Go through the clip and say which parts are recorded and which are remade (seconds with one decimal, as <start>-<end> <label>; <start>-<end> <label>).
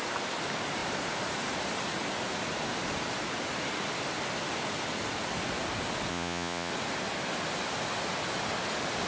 0.0-6.1 recorded; 6.1-6.7 remade; 6.7-9.1 recorded